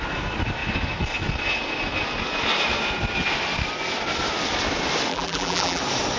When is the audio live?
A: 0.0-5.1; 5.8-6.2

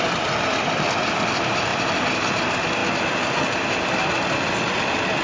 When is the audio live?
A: 0.0-1.7; 2.3-5.2

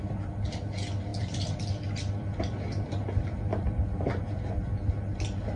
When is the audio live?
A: 0.0-1.1; 4.0-5.6